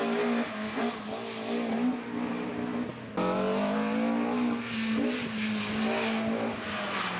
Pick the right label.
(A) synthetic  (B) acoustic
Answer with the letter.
B